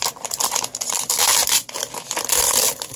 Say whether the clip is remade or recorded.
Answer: recorded